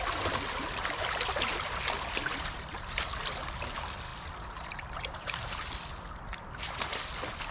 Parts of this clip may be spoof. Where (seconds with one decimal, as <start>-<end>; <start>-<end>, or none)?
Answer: none

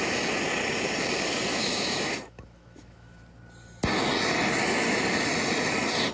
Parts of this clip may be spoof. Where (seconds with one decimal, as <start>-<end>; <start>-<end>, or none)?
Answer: 1.5-3.2